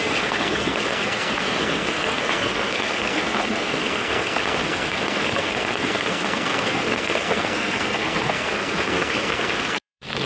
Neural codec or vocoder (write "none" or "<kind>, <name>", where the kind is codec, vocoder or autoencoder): codec, SNAC